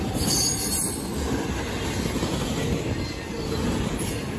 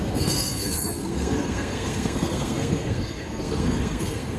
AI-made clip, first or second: second